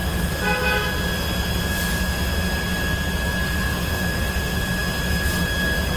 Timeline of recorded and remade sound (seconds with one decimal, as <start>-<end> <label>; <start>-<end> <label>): 0.0-6.0 recorded